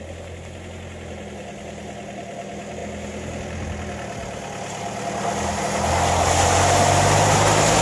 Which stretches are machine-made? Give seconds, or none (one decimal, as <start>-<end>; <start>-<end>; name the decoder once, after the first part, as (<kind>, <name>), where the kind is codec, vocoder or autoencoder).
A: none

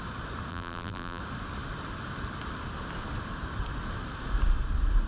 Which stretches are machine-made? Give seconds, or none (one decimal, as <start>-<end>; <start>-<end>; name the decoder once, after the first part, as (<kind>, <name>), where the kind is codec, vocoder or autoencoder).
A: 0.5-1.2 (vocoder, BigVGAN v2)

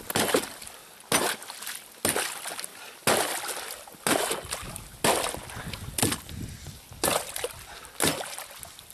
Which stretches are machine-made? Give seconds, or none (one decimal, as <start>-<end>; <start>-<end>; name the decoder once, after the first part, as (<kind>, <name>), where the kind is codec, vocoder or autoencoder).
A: none

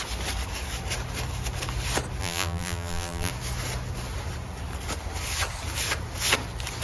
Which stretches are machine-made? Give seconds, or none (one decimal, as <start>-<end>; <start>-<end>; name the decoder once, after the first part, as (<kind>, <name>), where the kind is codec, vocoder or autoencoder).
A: 2.2-3.3 (vocoder, BigVGAN v2)

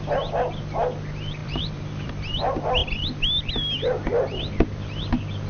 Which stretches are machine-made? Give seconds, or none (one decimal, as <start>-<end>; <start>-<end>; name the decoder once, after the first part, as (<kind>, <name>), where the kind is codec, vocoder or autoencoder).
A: 1.4-2.1 (vocoder, BigVGAN v2); 4.1-5.0

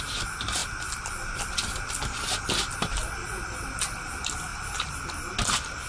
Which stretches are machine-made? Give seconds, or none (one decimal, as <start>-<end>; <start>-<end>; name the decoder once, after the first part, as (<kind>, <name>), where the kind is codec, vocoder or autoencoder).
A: 4.5-5.0 (vocoder, BigVGAN v2)

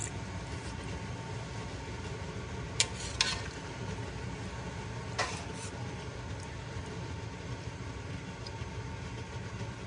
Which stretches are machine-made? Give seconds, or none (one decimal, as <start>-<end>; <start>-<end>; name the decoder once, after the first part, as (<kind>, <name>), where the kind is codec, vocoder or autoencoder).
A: 5.2-9.9 (vocoder, BigVGAN v2)